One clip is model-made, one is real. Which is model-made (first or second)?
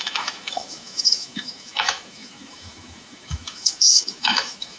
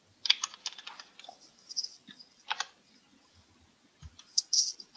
first